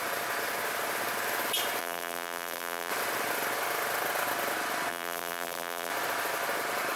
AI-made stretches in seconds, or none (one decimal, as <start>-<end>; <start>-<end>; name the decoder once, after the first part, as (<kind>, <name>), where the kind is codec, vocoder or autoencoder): 1.8-2.9 (vocoder, BigVGAN v2); 4.9-5.9